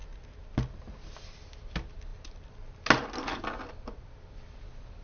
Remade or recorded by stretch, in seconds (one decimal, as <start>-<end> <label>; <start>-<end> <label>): 0.0-5.0 recorded